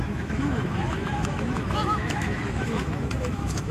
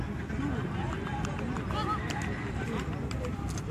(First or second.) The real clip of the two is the second